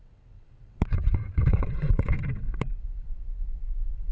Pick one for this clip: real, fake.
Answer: fake